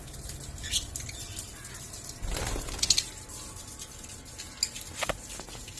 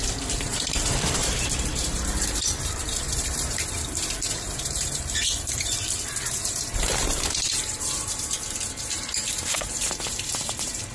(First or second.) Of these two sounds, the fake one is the second